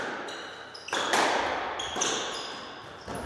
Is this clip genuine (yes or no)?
yes